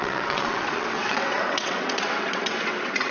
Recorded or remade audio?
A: remade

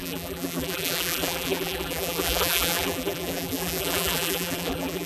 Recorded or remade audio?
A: remade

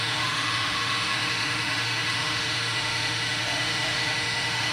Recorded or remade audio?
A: remade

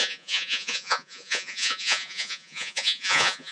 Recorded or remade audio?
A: remade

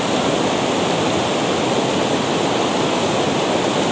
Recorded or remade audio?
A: recorded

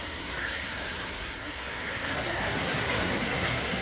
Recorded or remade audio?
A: remade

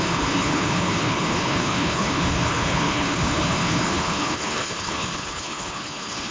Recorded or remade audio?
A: remade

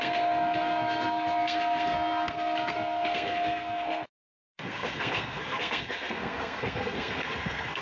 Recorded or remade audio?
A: remade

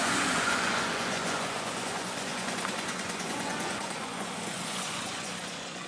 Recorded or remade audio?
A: remade